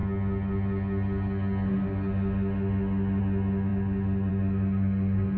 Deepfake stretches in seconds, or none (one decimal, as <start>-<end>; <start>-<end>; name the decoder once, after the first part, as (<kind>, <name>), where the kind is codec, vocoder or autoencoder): none

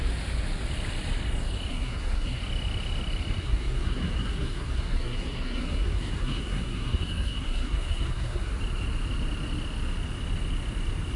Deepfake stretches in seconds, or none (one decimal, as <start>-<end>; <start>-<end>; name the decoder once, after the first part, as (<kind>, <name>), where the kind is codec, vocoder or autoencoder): 1.7-2.4 (codec, SNAC); 3.4-8.5

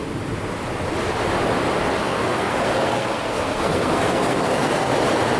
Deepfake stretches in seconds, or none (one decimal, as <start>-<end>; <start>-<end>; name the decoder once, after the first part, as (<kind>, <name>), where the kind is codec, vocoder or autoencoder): 2.0-4.9 (codec, SNAC)

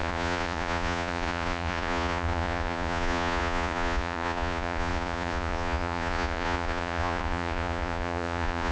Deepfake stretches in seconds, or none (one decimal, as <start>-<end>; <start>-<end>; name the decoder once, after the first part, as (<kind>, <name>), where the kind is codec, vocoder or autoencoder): 0.0-8.7 (vocoder, Vocos)

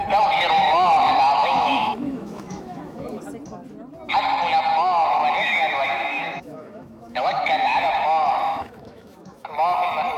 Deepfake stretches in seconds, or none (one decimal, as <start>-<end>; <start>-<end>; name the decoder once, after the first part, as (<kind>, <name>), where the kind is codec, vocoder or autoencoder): 1.4-3.2 (autoencoder, DAC-VAE); 5.4-7.9; 8.5-9.5

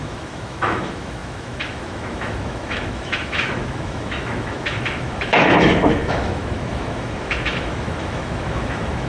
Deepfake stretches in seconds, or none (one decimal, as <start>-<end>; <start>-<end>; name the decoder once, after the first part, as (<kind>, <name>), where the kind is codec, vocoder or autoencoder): 0.0-9.1 (autoencoder, DAC-VAE)

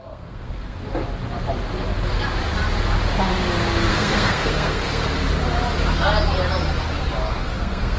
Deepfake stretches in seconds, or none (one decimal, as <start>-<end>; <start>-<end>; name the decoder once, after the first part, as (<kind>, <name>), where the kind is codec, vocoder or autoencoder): 0.0-0.8 (codec, SNAC); 3.9-5.0; 7.3-8.0

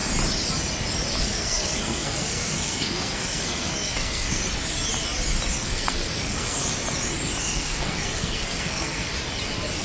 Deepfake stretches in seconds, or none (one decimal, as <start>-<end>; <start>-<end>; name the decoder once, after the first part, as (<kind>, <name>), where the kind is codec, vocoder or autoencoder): 1.2-4.4 (codec, SNAC); 5.6-6.7; 7.4-9.1